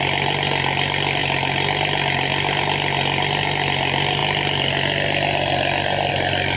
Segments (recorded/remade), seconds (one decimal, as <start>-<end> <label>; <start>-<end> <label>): 0.0-6.6 recorded